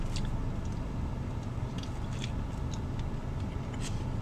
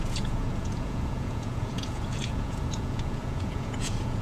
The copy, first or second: second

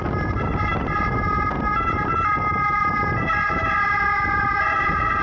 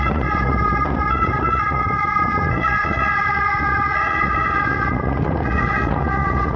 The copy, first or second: second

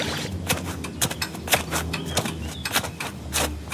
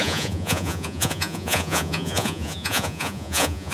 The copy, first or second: second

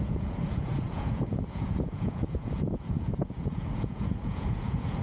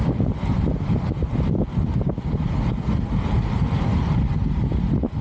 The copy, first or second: first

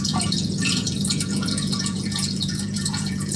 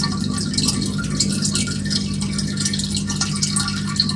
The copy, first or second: first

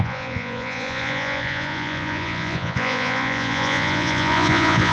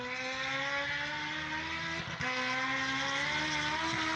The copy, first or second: first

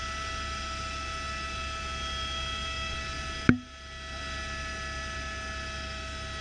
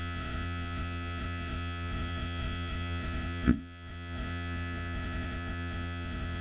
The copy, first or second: second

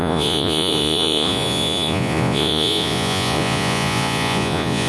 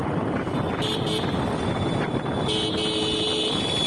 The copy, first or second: first